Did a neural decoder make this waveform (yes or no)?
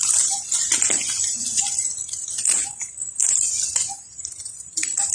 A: no